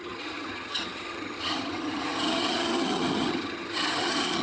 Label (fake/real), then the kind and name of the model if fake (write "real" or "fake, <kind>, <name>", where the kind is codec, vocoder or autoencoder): fake, vocoder, HiFi-GAN